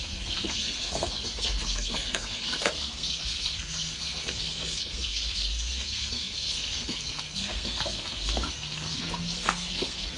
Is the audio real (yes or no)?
no